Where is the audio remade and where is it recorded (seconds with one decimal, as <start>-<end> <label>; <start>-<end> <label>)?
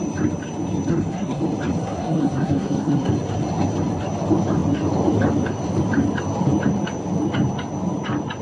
0.0-0.9 recorded; 0.9-1.4 remade; 1.4-1.8 recorded; 1.8-3.1 remade; 3.1-8.4 recorded